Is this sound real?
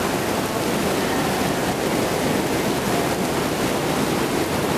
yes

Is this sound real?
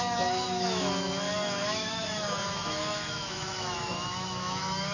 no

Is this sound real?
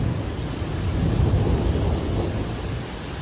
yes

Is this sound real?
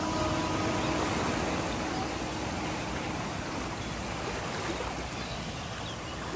yes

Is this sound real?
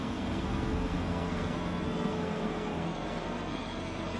no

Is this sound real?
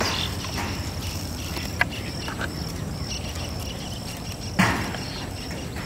yes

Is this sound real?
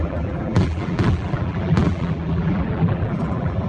no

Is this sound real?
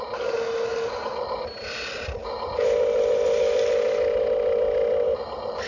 yes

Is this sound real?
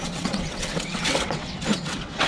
no